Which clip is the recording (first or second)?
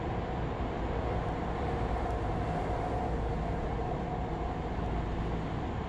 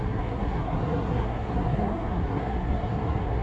first